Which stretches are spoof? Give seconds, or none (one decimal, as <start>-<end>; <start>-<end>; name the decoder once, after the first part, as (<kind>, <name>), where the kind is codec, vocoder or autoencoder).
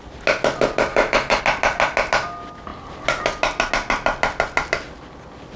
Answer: 0.9-1.4 (autoencoder, DAC-VAE)